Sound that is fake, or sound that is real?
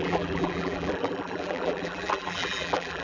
fake